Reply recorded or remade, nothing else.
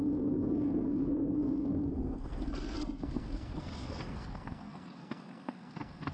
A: remade